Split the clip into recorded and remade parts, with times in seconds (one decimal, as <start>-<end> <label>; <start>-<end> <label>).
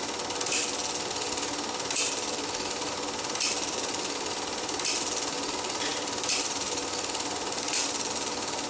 0.0-5.9 recorded; 5.9-7.8 remade; 7.8-8.7 recorded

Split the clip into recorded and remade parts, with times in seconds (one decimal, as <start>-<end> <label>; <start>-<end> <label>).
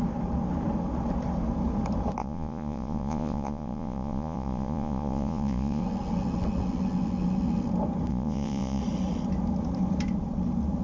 0.0-2.2 recorded; 2.2-5.8 remade; 5.8-8.1 recorded; 8.1-8.8 remade; 8.8-10.8 recorded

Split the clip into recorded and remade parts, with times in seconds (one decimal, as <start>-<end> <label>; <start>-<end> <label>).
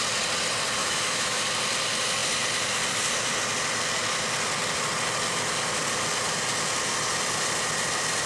0.0-0.8 recorded; 0.8-1.4 remade; 1.4-8.3 recorded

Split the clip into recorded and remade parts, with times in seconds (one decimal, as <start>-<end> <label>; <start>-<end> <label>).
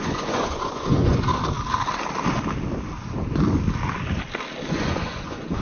0.0-1.3 remade; 1.3-4.7 recorded; 4.7-5.6 remade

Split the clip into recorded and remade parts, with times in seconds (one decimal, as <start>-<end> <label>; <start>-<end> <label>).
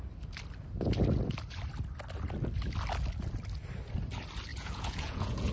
0.0-4.5 recorded; 4.5-5.5 remade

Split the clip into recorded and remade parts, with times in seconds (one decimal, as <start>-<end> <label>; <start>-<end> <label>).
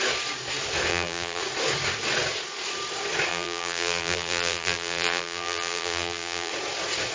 0.0-0.9 recorded; 0.9-1.4 remade; 1.4-3.3 recorded; 3.3-6.5 remade; 6.5-7.1 recorded